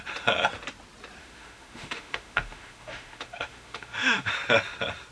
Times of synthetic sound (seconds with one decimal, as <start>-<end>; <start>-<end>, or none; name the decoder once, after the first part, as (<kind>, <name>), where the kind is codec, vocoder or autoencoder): 1.2-4.3 (autoencoder, DAC-VAE)